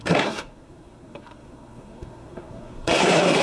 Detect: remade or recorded remade